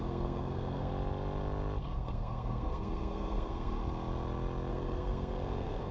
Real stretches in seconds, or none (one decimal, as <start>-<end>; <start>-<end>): 0.9-1.8; 3.8-4.7